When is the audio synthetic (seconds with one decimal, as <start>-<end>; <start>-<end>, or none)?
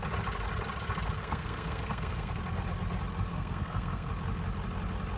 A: 1.2-2.4; 3.3-4.1